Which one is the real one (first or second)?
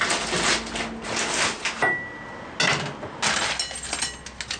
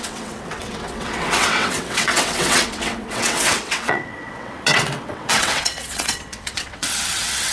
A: first